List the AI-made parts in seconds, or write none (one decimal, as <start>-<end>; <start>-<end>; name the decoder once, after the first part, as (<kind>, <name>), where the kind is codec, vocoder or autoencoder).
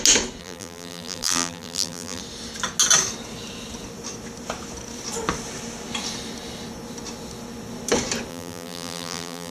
0.4-2.2 (vocoder, BigVGAN v2); 8.3-9.5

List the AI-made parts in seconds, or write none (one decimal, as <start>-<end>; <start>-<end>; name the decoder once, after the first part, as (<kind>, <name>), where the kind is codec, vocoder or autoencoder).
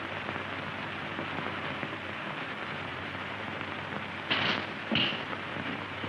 1.8-2.3 (vocoder, BigVGAN v2); 2.9-3.7; 5.1-6.1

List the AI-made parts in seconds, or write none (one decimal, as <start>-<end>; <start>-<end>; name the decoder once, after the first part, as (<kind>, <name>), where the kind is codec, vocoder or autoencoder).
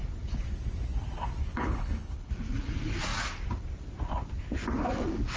1.4-2.3 (codec, HILCodec)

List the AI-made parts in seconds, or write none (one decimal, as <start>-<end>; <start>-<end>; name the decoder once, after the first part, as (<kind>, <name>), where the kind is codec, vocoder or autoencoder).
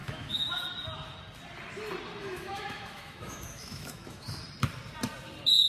0.0-0.6 (autoencoder, DAC-VAE); 2.2-4.4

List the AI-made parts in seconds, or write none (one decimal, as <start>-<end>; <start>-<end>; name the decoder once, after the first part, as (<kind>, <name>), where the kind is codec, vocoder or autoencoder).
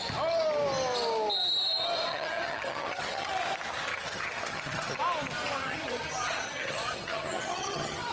2.1-3.3 (vocoder, HiFi-GAN); 3.9-5.0; 5.6-8.1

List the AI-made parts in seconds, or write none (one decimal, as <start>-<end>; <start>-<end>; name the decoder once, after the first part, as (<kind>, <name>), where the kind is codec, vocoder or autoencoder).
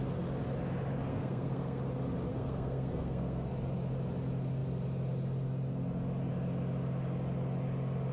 1.1-1.8 (codec, SNAC); 2.3-3.5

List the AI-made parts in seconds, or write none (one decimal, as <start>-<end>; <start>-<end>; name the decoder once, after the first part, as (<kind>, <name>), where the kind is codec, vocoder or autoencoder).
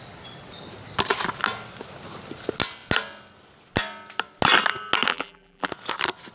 5.1-5.7 (vocoder, BigVGAN v2)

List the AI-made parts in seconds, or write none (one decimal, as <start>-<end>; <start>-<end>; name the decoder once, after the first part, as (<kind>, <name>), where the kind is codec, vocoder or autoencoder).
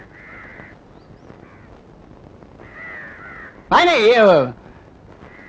none